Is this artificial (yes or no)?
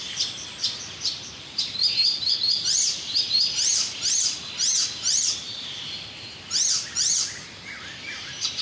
yes